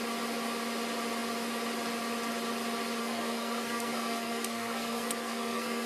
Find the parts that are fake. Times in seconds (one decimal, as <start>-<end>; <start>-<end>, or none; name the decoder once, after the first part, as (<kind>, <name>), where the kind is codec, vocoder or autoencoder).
3.0-5.9 (codec, SNAC)